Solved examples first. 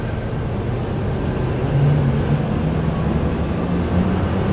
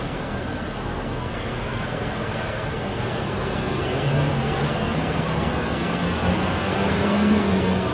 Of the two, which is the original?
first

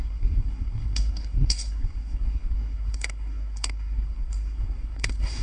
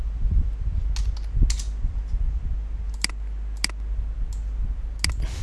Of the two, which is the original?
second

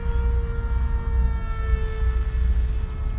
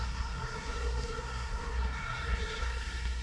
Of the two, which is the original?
first